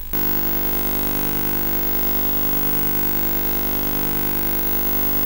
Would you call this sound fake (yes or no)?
no